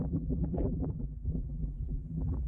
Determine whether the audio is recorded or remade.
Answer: remade